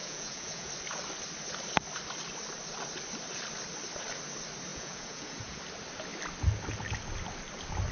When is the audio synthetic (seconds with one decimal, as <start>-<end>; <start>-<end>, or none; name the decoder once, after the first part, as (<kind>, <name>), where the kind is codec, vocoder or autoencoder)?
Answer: 0.0-0.7 (vocoder, Vocos); 4.7-5.6